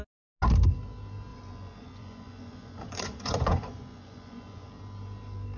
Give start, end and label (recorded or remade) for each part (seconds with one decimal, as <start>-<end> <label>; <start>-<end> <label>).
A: 0.0-1.3 recorded; 1.3-4.7 remade; 4.7-5.6 recorded